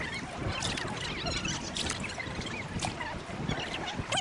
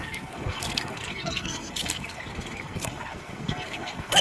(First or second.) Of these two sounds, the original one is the first